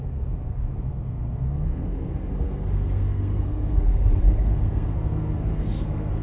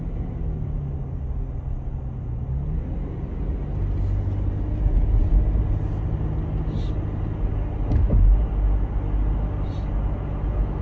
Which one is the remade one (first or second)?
first